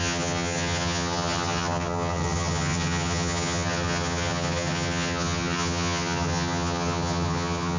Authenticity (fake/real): fake